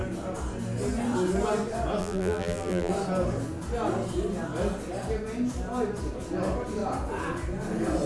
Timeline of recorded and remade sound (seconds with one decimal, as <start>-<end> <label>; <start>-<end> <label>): 0.0-2.0 recorded; 2.0-2.9 remade; 2.9-8.1 recorded